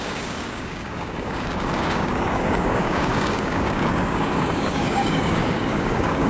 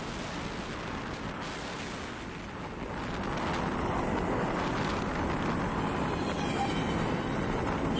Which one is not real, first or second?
first